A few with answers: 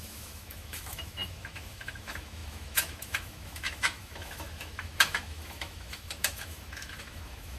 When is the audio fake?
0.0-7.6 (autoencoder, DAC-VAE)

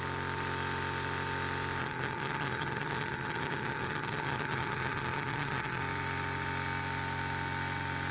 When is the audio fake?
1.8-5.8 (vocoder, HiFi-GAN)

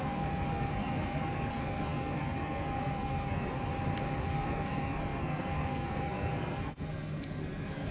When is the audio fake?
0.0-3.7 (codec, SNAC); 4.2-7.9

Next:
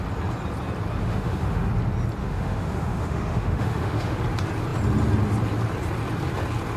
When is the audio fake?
1.0-1.7 (autoencoder, DAC-VAE); 2.2-4.2

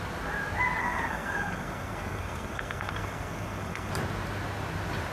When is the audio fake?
0.8-3.9 (codec, SNAC)

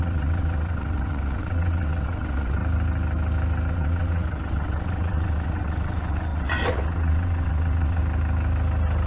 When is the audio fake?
0.0-2.6 (vocoder, WaveNeXt); 3.7-8.0

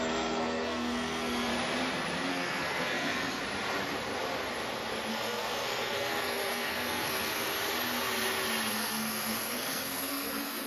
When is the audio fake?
0.0-1.5 (codec, SNAC); 2.3-3.4; 5.1-7.5; 8.7-10.7

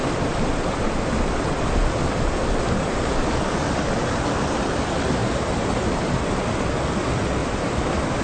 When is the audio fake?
5.2-6.4 (vocoder, BigVGAN v2); 7.4-8.2